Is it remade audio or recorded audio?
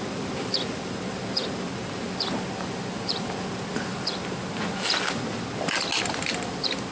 recorded